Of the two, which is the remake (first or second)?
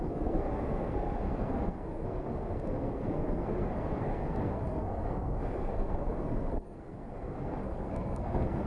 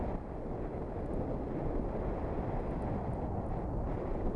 first